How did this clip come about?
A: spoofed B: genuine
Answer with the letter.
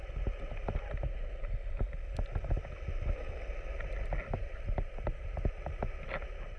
B